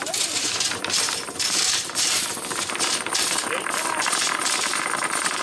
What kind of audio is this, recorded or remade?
remade